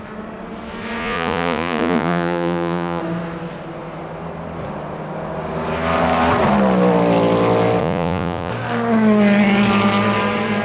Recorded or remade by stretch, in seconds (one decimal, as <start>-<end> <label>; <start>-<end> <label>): 0.0-1.0 recorded; 1.0-3.0 remade; 3.0-7.8 recorded; 7.8-8.5 remade; 8.5-10.6 recorded